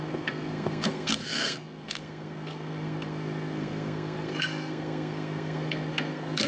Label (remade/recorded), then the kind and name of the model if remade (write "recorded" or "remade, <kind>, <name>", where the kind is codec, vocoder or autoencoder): remade, codec, SNAC